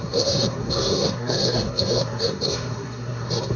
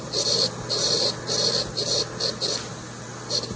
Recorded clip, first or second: second